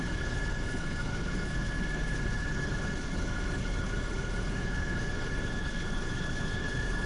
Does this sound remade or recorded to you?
remade